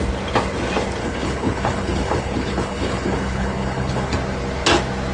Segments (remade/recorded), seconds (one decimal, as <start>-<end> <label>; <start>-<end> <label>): 0.0-1.0 recorded; 1.0-4.1 remade; 4.1-5.1 recorded

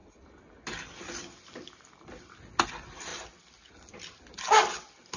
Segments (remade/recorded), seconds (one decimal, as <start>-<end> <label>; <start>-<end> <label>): 0.0-5.2 recorded